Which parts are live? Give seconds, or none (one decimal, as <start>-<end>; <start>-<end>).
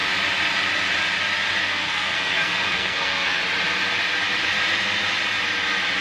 0.0-1.6; 3.4-6.0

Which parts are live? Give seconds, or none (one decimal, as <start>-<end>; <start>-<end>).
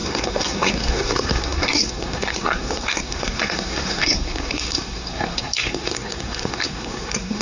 none